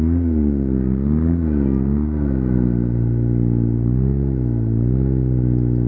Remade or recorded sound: recorded